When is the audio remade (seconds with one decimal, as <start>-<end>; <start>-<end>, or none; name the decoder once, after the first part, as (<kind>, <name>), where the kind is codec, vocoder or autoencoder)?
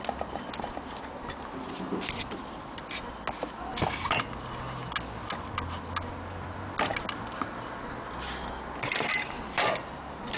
none